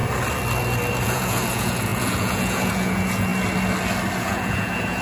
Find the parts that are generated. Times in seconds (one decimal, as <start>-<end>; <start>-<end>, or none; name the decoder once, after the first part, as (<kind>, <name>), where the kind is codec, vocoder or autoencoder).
1.0-3.3 (vocoder, Vocos); 4.2-5.0